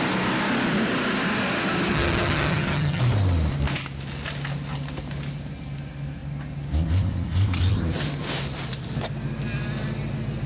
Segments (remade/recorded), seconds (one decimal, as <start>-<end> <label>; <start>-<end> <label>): 0.0-1.9 recorded; 1.9-3.0 remade; 3.0-10.5 recorded